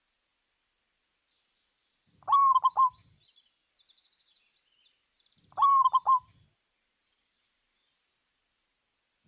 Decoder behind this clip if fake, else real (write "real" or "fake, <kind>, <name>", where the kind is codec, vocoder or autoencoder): real